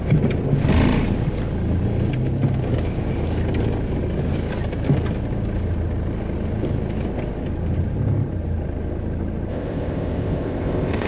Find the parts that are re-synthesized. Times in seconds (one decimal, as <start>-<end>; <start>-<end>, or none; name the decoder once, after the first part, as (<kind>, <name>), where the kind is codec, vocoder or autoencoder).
9.5-11.1 (codec, ZipCodec)